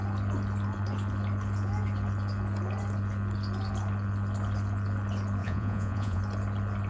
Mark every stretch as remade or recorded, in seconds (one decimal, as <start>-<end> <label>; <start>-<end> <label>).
0.0-5.4 recorded; 5.4-6.2 remade; 6.2-6.9 recorded